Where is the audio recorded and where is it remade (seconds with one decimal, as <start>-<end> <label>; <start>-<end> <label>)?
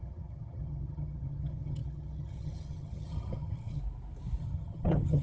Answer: 0.0-3.8 remade; 3.8-4.4 recorded; 4.4-5.2 remade